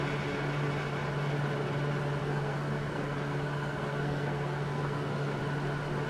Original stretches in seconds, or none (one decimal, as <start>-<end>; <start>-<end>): 0.0-2.2; 5.4-6.1